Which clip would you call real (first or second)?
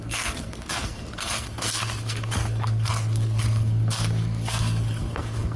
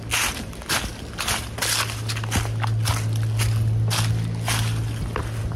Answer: second